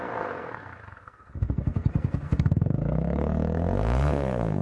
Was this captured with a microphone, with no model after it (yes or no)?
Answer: no